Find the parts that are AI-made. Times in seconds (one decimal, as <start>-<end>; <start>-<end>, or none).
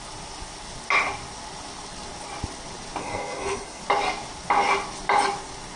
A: 3.0-3.8